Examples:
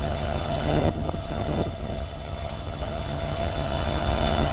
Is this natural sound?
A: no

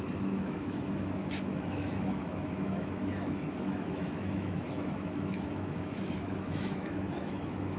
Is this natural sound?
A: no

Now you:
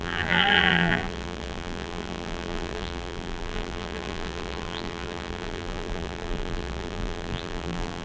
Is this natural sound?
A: no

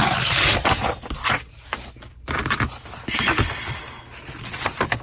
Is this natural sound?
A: yes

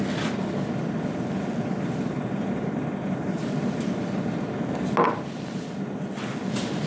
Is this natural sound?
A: yes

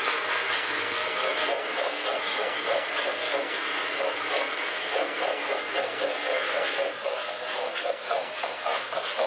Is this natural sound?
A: no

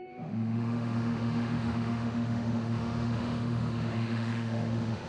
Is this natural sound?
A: no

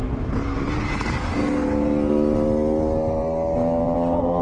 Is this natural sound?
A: yes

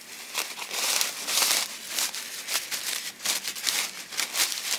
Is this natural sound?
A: yes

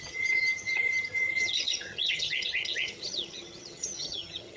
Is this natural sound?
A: no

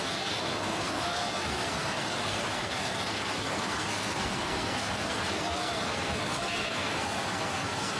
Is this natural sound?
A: no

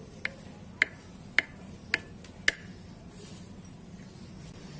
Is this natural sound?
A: yes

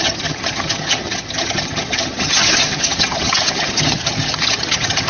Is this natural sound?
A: no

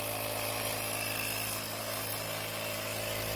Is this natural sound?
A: yes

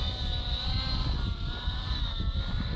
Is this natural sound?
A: yes